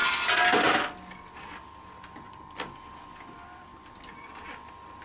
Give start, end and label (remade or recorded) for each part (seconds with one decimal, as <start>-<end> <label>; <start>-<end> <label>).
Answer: 0.0-5.0 recorded